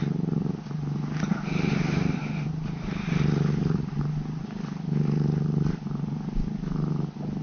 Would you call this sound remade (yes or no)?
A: no